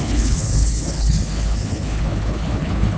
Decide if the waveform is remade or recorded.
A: remade